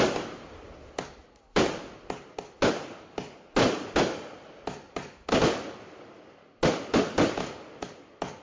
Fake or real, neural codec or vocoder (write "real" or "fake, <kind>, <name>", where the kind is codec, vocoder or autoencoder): real